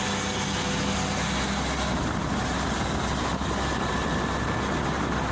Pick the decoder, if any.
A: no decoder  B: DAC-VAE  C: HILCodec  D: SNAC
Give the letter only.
A